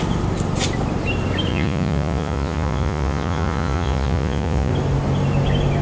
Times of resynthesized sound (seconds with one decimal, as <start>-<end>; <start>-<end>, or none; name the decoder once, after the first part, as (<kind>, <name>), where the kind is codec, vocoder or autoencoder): 1.5-4.7 (vocoder, Vocos)